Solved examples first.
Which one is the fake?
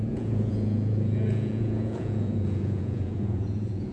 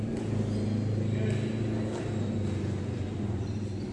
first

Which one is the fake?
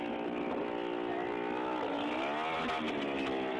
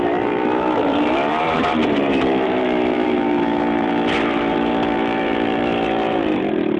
second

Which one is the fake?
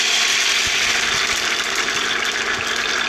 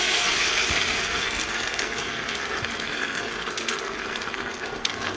second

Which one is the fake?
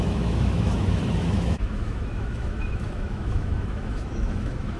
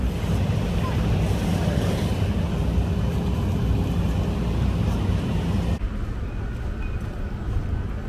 first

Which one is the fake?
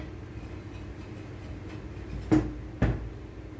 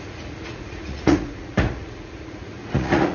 second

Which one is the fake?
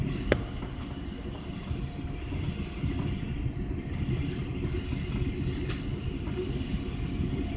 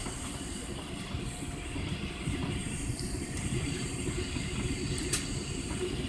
second